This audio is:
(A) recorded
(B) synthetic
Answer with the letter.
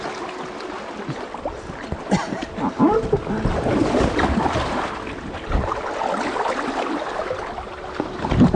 A